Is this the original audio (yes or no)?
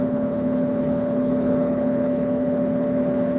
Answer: no